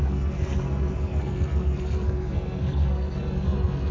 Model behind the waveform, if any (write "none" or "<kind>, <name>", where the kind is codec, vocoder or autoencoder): codec, SNAC